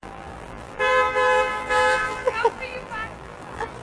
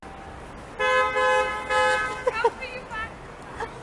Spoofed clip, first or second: first